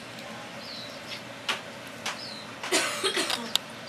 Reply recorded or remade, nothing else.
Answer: recorded